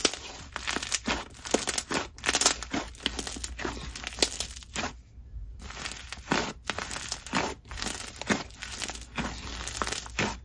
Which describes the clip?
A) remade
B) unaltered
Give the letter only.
B